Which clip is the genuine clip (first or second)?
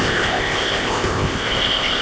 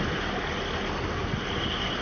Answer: second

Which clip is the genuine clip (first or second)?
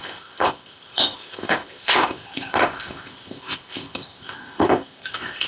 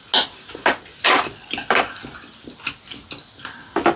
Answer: second